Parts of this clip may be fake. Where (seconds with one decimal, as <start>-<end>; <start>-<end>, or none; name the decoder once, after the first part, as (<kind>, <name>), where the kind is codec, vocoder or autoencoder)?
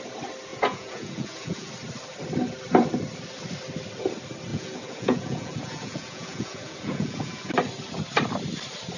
0.5-1.7 (vocoder, Vocos); 4.5-7.5